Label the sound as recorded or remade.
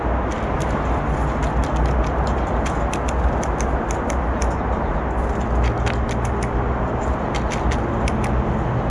recorded